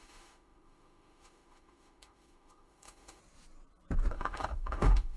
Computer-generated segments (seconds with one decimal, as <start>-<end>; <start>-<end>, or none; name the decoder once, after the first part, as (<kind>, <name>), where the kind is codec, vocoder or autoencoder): 0.0-3.2 (autoencoder, DAC-VAE); 4.1-5.2